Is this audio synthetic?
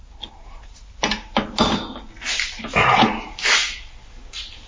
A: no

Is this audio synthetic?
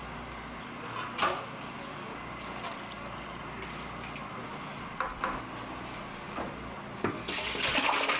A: no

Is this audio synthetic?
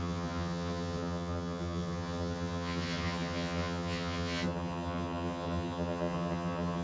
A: yes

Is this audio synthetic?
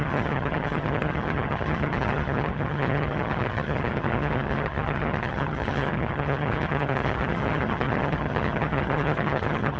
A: yes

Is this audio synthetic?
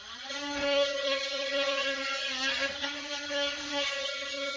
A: yes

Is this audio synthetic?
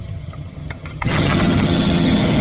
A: yes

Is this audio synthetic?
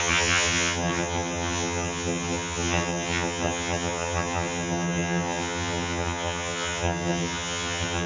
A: yes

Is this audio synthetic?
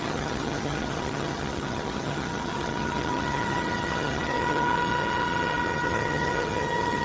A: yes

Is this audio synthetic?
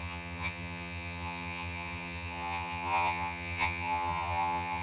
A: yes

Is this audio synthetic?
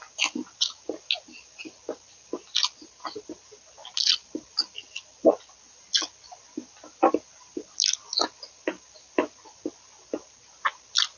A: no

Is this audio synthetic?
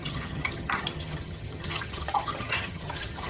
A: yes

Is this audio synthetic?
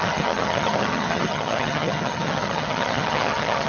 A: yes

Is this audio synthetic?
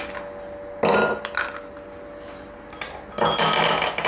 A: no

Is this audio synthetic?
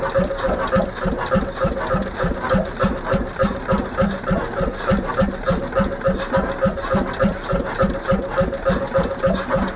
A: no